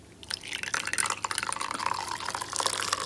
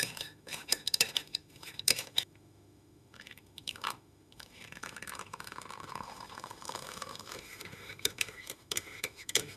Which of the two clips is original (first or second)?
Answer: first